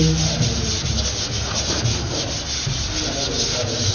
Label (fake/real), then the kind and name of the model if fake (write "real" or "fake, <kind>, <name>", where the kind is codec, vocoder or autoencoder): real